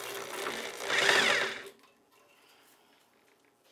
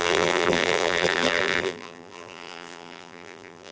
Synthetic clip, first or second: second